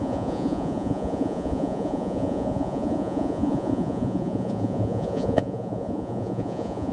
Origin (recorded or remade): remade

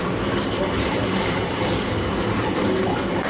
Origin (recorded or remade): remade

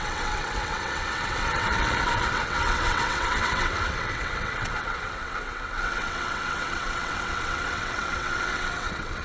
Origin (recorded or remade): remade